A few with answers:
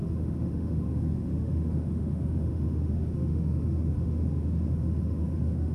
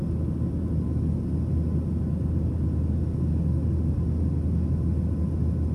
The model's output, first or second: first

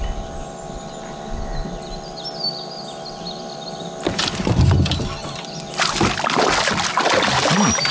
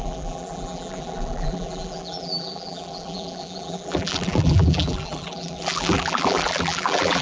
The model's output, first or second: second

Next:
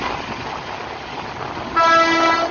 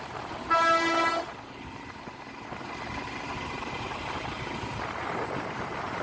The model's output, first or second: second